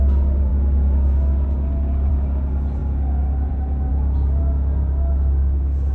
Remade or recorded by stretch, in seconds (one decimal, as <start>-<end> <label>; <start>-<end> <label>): 0.0-5.9 recorded